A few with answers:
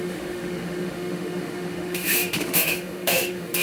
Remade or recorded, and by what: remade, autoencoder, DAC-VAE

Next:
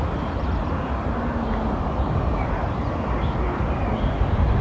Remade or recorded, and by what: recorded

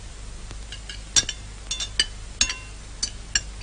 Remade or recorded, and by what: recorded